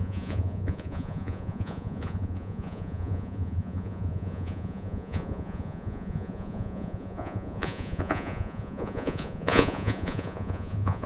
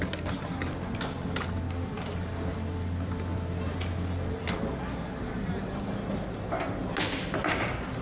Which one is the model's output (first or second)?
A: first